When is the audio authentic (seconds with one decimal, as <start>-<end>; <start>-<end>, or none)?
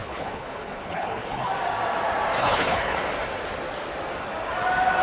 1.5-2.4; 3.0-5.0